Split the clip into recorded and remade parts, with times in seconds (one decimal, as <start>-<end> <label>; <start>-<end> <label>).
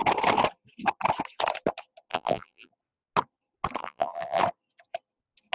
0.0-2.1 recorded; 2.1-2.7 remade; 2.7-3.8 recorded; 3.8-4.4 remade; 4.4-5.5 recorded